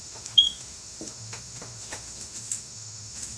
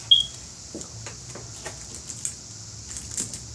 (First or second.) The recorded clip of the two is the second